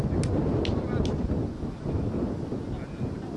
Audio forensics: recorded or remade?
recorded